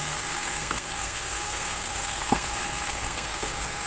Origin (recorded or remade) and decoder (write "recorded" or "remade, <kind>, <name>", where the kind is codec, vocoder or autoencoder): remade, codec, SNAC